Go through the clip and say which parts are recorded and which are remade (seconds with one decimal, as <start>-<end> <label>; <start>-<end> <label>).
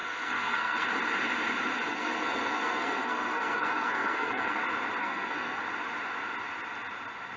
0.0-0.9 remade; 0.9-1.9 recorded; 1.9-4.6 remade; 4.6-5.0 recorded; 5.0-5.6 remade; 5.6-7.4 recorded